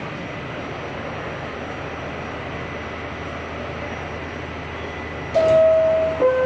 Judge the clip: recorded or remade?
recorded